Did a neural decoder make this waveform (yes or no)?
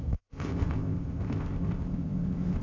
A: yes